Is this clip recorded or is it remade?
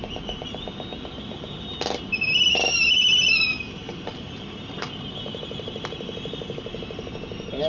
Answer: recorded